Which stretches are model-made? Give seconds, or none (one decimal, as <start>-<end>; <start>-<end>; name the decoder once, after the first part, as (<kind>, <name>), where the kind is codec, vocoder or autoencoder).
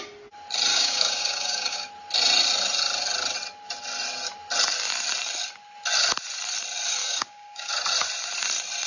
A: 0.7-1.9 (codec, DAC); 7.0-7.7